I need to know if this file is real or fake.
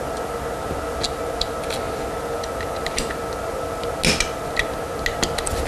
real